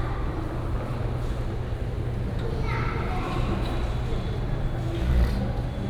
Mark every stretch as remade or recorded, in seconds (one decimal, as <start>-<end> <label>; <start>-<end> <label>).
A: 0.0-5.9 recorded

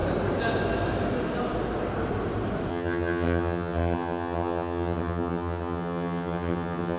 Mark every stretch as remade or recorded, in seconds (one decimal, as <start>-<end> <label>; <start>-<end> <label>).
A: 0.0-2.7 recorded; 2.7-7.0 remade

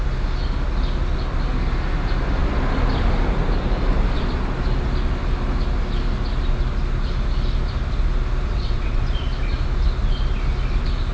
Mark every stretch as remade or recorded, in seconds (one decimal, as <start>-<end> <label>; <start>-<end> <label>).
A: 0.0-8.5 recorded; 8.5-9.0 remade; 9.0-11.1 recorded

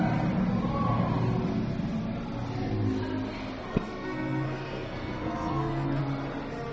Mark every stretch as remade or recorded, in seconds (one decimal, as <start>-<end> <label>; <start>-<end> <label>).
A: 0.0-3.7 recorded; 3.7-6.0 remade; 6.0-6.7 recorded